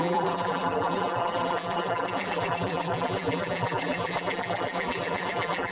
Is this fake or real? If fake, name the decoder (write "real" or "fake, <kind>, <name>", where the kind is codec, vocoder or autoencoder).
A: fake, vocoder, BigVGAN v2